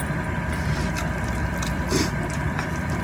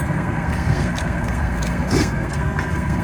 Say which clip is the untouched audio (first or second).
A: first